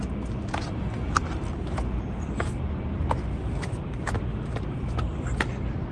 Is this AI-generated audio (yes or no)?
no